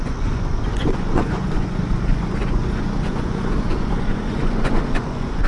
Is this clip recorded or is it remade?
remade